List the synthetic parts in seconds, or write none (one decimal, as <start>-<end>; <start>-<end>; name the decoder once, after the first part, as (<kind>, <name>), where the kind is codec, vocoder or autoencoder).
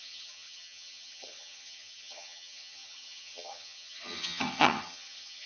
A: 0.0-5.5 (vocoder, HiFi-GAN)